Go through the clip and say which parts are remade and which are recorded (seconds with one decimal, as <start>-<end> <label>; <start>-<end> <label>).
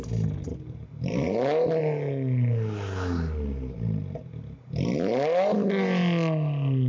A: 0.0-6.9 recorded